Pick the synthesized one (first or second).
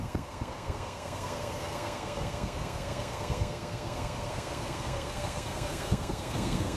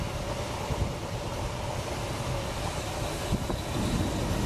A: first